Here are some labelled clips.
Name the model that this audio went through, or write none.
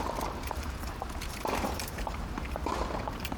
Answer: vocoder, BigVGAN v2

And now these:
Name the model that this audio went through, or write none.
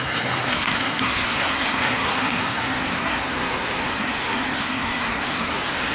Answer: codec, SNAC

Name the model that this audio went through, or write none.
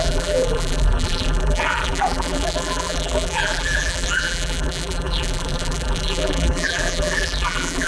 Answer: vocoder, BigVGAN v2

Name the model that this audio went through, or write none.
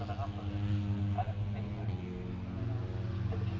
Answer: none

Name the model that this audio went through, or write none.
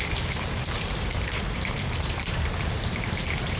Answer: vocoder, BigVGAN v2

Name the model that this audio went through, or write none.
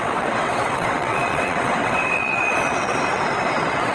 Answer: vocoder, WaveNeXt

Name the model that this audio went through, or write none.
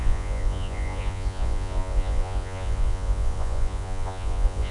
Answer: vocoder, Vocos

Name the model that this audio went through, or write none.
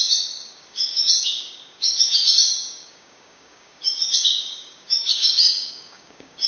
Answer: codec, DAC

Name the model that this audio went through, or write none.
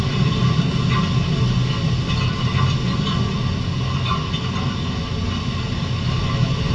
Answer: none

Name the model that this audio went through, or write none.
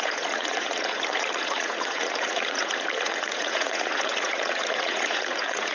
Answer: vocoder, Vocos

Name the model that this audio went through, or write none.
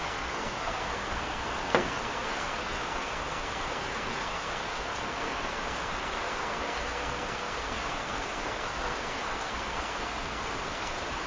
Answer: codec, SNAC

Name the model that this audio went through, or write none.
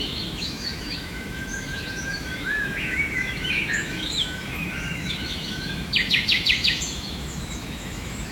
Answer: autoencoder, DAC-VAE